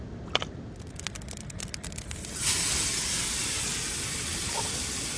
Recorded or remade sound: recorded